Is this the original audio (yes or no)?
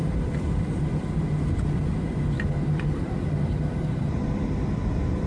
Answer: no